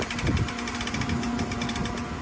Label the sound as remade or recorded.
recorded